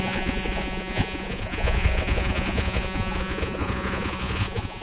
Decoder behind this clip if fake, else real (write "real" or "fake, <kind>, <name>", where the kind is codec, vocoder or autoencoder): fake, vocoder, Vocos